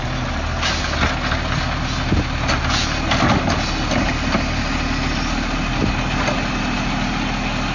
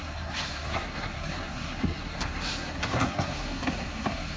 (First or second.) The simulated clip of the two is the second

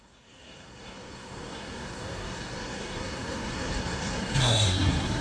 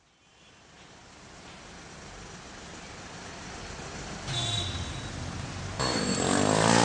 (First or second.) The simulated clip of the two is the first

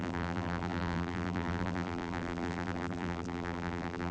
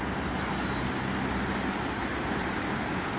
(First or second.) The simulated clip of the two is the first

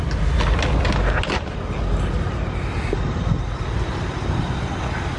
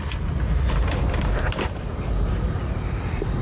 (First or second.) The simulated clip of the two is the second